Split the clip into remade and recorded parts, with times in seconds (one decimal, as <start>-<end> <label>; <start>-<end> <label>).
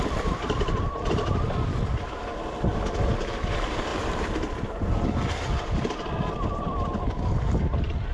0.0-2.7 remade; 2.7-3.5 recorded; 3.5-8.1 remade